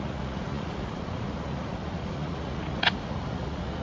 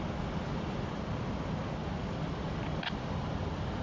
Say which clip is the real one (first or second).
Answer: second